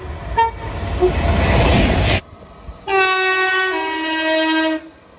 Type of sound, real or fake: real